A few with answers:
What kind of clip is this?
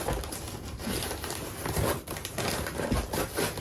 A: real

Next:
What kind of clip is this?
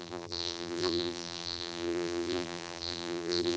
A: fake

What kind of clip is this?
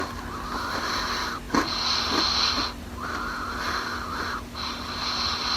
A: real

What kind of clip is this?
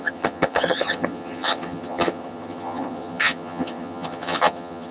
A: fake